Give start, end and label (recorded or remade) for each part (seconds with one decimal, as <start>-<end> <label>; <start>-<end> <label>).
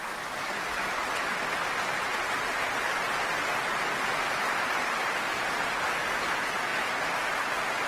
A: 0.0-7.9 recorded